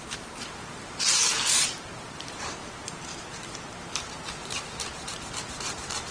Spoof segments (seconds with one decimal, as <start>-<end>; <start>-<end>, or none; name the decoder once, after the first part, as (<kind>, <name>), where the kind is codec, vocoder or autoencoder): 0.0-1.2 (vocoder, BigVGAN v2); 1.7-6.1